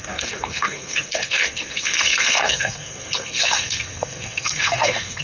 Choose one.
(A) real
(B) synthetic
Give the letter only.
B